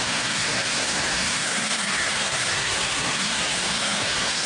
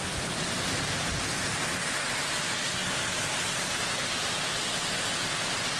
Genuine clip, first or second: second